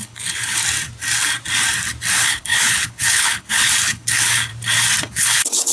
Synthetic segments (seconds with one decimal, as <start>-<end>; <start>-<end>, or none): 0.0-0.6; 2.1-4.5; 5.0-5.7